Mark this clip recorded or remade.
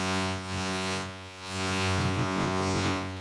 remade